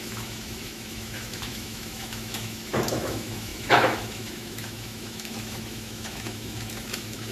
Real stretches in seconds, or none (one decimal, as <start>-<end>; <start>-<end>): none